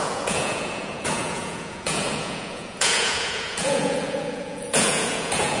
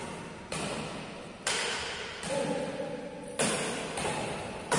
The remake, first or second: first